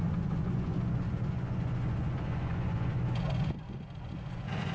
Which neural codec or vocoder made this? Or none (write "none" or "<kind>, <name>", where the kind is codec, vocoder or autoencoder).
vocoder, Vocos